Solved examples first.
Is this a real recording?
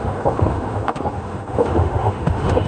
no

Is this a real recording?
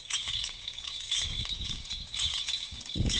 no